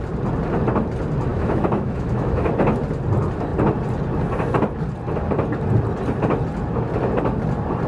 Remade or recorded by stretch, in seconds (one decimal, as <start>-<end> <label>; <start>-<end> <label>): 0.0-1.3 recorded; 1.3-2.5 remade; 2.5-7.9 recorded